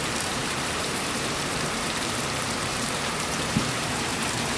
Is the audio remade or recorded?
remade